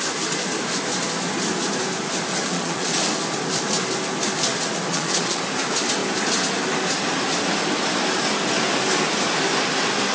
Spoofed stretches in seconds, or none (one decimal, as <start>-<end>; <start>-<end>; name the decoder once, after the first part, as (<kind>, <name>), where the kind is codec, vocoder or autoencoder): 2.3-3.0 (vocoder, Vocos); 4.9-5.4